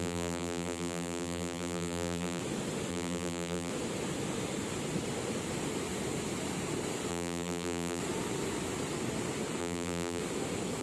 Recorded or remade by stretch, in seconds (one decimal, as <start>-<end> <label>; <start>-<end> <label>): 0.0-2.4 remade; 2.4-2.9 recorded; 2.9-3.7 remade; 3.7-7.1 recorded; 7.1-8.0 remade; 8.0-9.6 recorded; 9.6-10.2 remade; 10.2-10.8 recorded